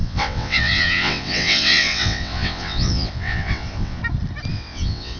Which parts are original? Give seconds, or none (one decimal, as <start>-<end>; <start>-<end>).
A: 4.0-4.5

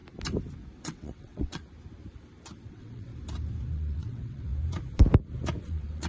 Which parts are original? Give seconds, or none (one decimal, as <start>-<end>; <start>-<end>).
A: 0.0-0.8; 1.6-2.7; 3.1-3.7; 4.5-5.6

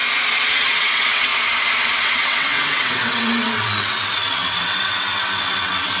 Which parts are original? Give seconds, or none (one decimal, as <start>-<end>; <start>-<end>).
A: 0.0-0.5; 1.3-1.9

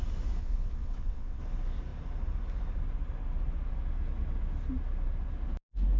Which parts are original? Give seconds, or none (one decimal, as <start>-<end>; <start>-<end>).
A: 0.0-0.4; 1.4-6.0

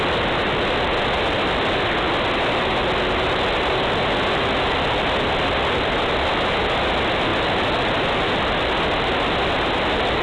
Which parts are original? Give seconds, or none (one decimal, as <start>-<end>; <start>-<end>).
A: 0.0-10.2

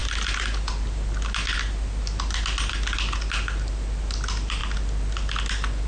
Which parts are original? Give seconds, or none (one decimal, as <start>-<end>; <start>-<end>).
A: 0.0-5.9

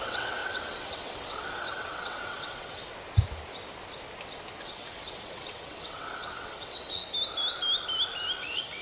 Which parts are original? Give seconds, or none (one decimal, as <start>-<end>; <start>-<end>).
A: 2.9-4.6; 7.0-8.4